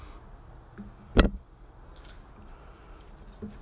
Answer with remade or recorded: recorded